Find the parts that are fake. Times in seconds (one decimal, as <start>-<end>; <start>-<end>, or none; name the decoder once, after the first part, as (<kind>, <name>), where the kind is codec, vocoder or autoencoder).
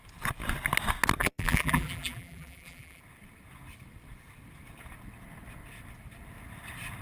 1.2-3.0 (vocoder, BigVGAN v2)